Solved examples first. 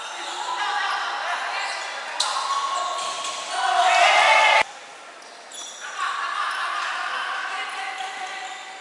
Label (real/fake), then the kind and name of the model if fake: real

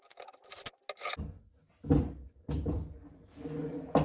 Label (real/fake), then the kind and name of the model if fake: real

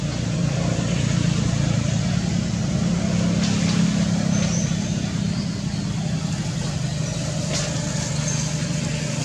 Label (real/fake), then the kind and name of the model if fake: real